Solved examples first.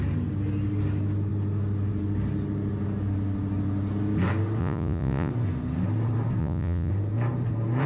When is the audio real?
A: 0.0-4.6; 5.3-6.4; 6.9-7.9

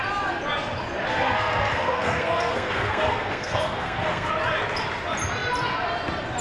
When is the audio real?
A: 0.0-1.1; 4.3-6.4

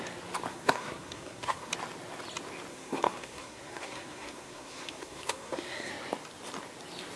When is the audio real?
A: 0.0-0.5; 1.7-2.7; 5.9-7.2

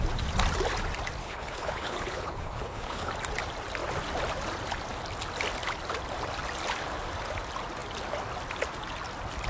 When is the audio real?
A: 0.0-1.2; 3.1-9.5

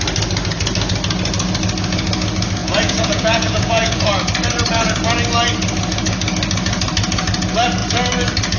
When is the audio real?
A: 0.0-2.6; 4.1-8.6

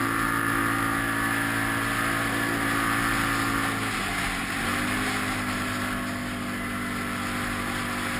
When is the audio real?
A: 0.0-8.2